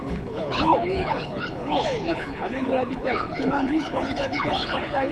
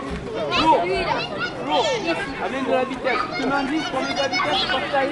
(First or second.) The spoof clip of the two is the first